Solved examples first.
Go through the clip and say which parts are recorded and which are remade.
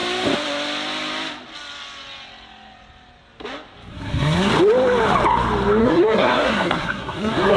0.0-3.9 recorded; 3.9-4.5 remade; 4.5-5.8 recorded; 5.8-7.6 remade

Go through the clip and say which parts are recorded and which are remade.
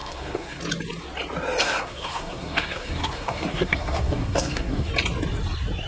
0.0-0.6 remade; 0.6-1.6 recorded; 1.6-4.9 remade; 4.9-5.9 recorded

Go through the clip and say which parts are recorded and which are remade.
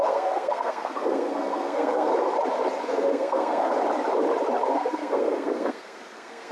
0.0-2.1 remade; 2.1-2.8 recorded; 2.8-3.7 remade; 3.7-4.7 recorded; 4.7-6.5 remade